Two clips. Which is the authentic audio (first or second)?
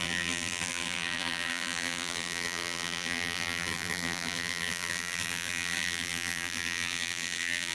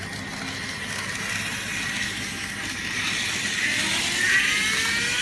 second